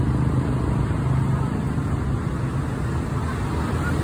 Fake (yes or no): no